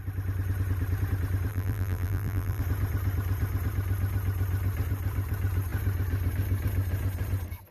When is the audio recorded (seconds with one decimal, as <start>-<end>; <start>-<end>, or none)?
0.0-1.5; 2.6-7.7